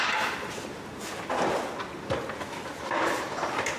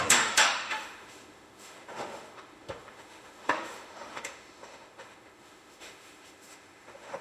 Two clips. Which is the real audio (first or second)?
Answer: first